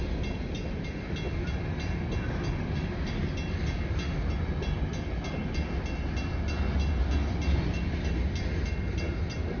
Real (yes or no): yes